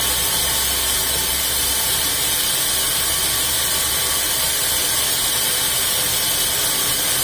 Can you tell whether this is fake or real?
real